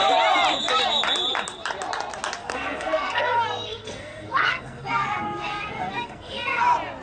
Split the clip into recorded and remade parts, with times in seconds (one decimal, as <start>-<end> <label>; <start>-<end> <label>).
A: 0.0-2.4 recorded; 2.4-6.6 remade; 6.6-7.0 recorded